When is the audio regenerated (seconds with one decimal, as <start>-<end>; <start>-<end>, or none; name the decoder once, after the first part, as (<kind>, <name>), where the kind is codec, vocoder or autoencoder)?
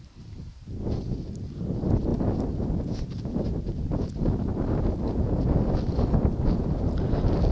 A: none